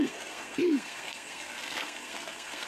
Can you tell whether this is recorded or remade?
remade